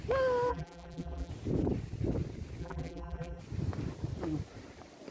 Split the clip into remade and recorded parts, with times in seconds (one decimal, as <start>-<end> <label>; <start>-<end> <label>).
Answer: 0.0-0.5 recorded; 0.5-1.3 remade; 1.3-2.6 recorded; 2.6-3.4 remade; 3.4-5.1 recorded